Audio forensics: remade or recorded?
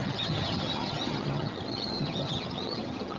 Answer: remade